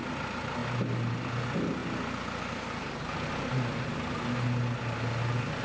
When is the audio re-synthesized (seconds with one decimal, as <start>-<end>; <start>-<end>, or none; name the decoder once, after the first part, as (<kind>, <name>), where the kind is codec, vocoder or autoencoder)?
none